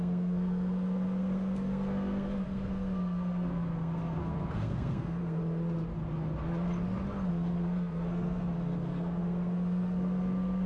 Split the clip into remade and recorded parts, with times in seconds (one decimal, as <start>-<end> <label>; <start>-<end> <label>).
0.0-5.4 remade; 5.4-7.3 recorded; 7.3-10.7 remade